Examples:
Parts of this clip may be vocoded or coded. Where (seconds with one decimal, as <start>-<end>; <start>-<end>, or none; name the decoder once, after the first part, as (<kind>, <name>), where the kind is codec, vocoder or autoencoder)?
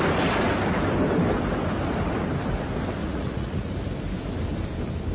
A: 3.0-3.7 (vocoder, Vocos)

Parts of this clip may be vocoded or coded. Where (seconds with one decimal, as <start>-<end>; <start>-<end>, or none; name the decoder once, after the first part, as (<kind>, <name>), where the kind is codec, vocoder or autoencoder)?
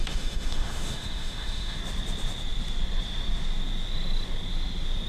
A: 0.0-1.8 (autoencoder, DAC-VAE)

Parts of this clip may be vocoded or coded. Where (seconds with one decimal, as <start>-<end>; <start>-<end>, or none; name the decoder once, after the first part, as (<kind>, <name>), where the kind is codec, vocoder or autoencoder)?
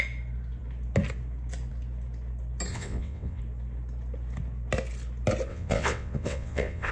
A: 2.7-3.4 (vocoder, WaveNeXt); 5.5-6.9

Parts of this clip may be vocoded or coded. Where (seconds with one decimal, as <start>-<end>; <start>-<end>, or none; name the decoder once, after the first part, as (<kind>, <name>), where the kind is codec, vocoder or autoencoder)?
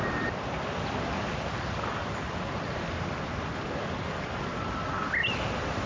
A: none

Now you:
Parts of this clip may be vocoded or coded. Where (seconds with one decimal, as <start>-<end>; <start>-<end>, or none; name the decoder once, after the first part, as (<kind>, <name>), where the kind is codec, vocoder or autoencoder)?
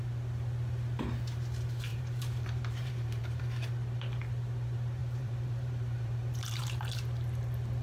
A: 1.9-3.4 (vocoder, BigVGAN v2); 5.0-6.6